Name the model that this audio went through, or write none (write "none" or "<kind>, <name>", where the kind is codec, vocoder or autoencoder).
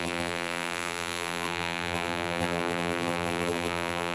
vocoder, BigVGAN v2